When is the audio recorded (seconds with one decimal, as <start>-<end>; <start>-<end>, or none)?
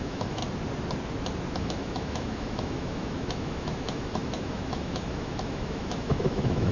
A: 0.4-1.6